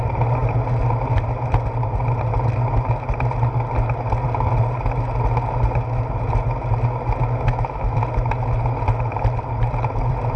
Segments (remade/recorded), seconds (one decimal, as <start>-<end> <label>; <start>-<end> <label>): 0.0-7.5 recorded; 7.5-8.0 remade; 8.0-10.4 recorded